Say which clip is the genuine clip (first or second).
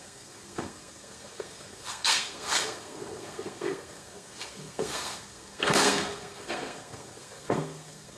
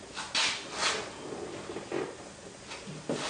second